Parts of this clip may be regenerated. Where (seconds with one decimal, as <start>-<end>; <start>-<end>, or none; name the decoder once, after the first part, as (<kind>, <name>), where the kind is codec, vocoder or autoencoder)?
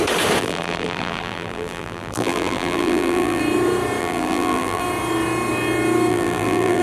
0.4-3.4 (vocoder, BigVGAN v2); 4.0-4.8; 6.1-6.8